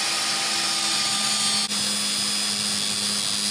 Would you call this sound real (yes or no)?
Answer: yes